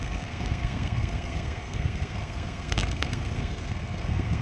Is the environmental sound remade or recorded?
remade